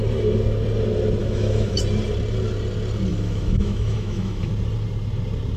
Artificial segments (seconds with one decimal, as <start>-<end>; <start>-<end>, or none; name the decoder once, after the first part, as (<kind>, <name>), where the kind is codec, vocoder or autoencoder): 1.2-1.8 (autoencoder, DAC-VAE); 3.1-4.5